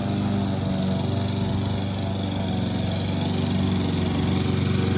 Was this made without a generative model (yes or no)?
yes